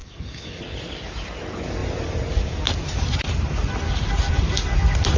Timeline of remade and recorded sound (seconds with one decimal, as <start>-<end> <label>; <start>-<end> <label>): 0.0-0.6 remade; 0.6-5.2 recorded